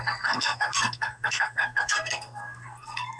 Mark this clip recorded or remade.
remade